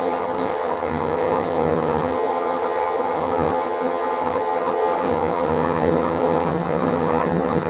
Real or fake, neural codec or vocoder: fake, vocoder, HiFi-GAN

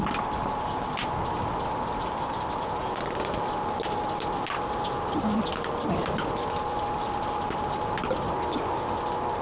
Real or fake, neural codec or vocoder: real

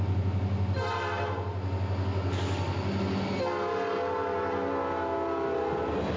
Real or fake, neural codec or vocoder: real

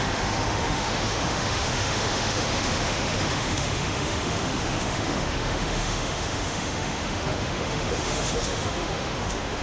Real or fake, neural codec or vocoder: fake, autoencoder, DAC-VAE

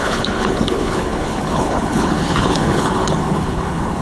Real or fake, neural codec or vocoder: fake, codec, HILCodec